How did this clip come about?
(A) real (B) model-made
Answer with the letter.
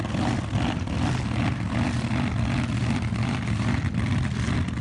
A